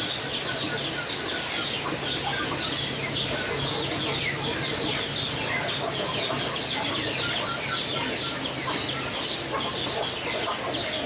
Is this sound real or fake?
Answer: real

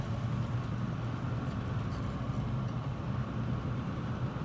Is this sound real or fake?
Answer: real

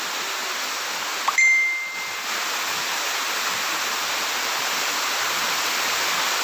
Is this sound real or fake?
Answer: real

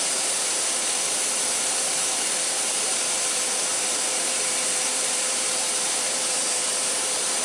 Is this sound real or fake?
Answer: fake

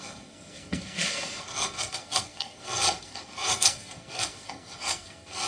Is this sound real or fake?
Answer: fake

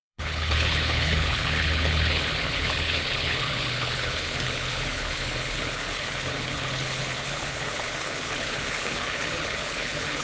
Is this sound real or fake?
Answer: fake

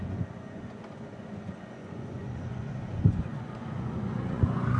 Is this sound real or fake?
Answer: fake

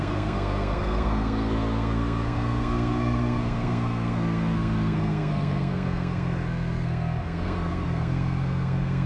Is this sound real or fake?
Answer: fake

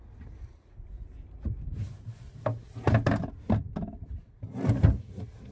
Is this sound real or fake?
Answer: real